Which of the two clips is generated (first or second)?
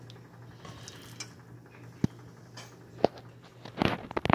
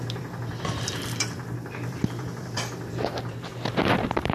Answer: second